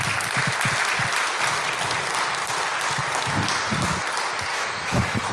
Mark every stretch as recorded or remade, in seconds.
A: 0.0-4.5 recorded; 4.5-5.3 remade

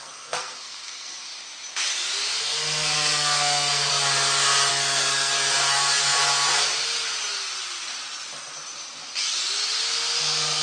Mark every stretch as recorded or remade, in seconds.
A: 0.0-1.3 remade; 1.3-2.4 recorded; 2.4-3.9 remade; 3.9-4.7 recorded; 4.7-5.3 remade; 5.3-10.2 recorded; 10.2-10.6 remade

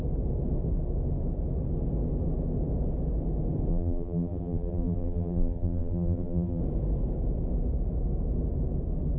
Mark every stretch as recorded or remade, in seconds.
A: 0.0-3.7 recorded; 3.7-6.6 remade; 6.6-9.2 recorded

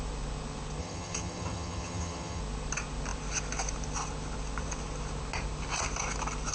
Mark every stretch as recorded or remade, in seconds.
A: 0.0-0.8 recorded; 0.8-2.4 remade; 2.4-6.5 recorded

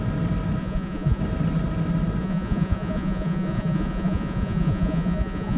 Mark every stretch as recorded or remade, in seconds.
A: 0.0-0.6 recorded; 0.6-1.2 remade; 1.2-2.2 recorded; 2.2-5.6 remade